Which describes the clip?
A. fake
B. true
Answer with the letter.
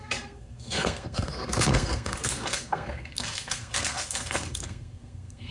A